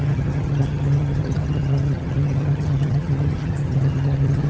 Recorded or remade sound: remade